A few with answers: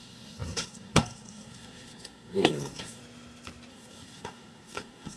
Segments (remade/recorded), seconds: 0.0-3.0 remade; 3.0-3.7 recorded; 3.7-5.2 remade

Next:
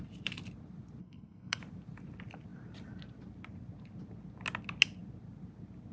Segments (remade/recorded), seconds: 0.0-1.0 recorded; 1.0-1.6 remade; 1.6-5.9 recorded

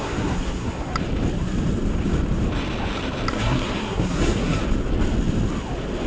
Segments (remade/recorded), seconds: 0.0-0.9 remade; 0.9-3.3 recorded; 3.3-4.6 remade; 4.6-6.1 recorded

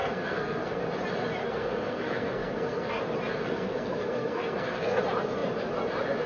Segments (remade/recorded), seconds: 0.0-0.8 remade; 0.8-1.4 recorded; 1.4-2.9 remade; 2.9-3.4 recorded; 3.4-5.0 remade; 5.0-6.3 recorded

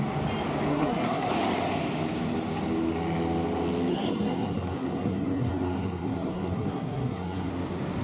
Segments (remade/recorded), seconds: 0.0-0.7 recorded; 0.7-1.3 remade; 1.3-3.9 recorded; 3.9-7.5 remade; 7.5-8.0 recorded